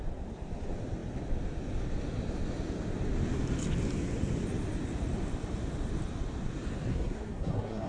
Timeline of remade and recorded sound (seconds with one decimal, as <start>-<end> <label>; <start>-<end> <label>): 0.0-6.9 recorded; 6.9-7.9 remade

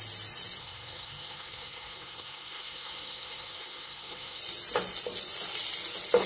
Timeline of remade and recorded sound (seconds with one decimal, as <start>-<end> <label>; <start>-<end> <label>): 0.0-0.6 recorded; 0.6-4.4 remade; 4.4-6.3 recorded

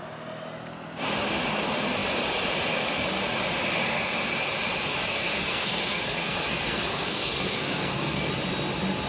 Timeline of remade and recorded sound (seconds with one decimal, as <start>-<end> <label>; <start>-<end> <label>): 0.0-5.0 recorded; 5.0-8.3 remade; 8.3-9.1 recorded

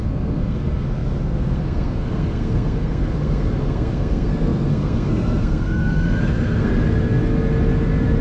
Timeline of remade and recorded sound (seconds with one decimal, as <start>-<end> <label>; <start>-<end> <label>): 0.0-6.7 remade; 6.7-8.2 recorded